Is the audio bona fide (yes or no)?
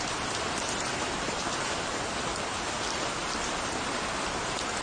yes